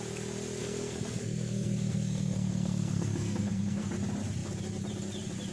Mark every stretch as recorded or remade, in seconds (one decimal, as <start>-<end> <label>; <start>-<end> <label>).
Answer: 0.0-0.6 recorded; 0.6-3.9 remade; 3.9-5.5 recorded